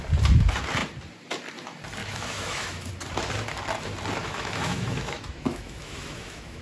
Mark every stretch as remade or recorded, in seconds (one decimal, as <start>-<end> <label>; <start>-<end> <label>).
0.0-2.0 recorded; 2.0-2.9 remade; 2.9-4.2 recorded; 4.2-6.6 remade